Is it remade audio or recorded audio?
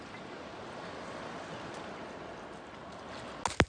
recorded